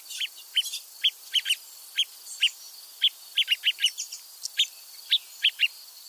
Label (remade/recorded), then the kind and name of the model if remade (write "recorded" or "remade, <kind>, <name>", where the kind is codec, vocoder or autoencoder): recorded